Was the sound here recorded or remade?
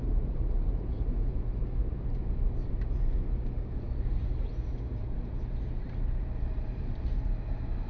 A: remade